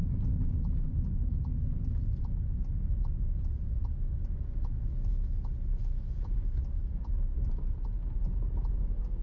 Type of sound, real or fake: real